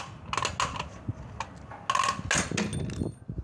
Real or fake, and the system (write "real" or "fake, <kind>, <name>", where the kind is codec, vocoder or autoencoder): real